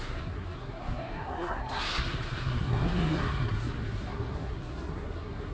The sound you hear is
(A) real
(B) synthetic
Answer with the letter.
B